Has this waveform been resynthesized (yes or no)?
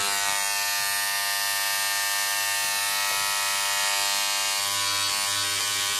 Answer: no